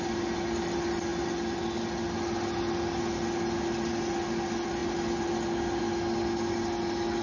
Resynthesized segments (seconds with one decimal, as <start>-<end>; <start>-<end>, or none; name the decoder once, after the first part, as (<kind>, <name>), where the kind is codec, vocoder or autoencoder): none